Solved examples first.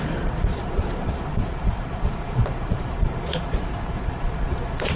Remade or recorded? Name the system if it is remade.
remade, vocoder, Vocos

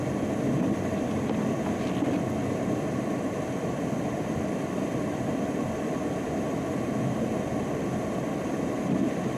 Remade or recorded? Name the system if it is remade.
recorded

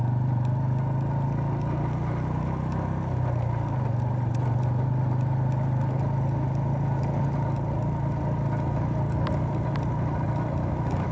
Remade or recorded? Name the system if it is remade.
recorded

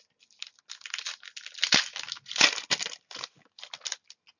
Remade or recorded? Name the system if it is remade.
recorded